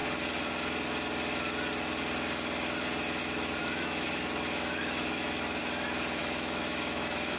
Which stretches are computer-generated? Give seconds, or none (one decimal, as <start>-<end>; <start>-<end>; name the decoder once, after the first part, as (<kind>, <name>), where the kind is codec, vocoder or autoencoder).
3.6-5.6 (autoencoder, DAC-VAE); 6.2-7.4